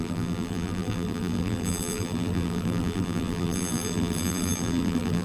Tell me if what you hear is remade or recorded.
remade